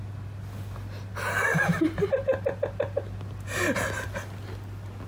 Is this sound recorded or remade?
recorded